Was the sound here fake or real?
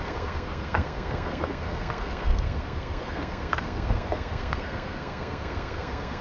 fake